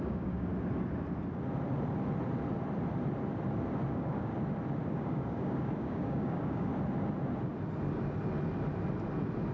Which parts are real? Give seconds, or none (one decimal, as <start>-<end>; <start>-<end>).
0.5-3.9; 4.3-4.9; 6.7-9.5